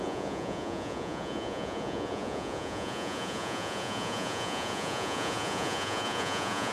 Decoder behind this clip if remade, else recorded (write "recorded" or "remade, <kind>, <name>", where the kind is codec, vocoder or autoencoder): remade, vocoder, Vocos